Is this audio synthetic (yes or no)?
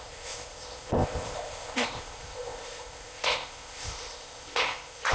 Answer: yes